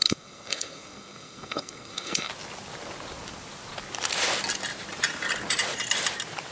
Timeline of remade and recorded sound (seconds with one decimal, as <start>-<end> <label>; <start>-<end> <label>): 0.0-2.3 remade; 2.3-6.5 recorded